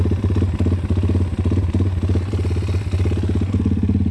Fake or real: real